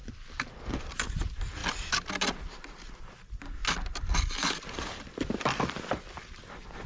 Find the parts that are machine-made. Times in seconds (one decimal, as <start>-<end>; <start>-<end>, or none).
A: 0.0-0.5